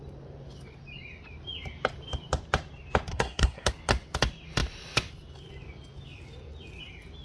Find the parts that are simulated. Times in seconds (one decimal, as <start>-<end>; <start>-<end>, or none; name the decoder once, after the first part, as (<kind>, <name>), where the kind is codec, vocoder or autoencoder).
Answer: 3.1-3.7 (codec, SNAC)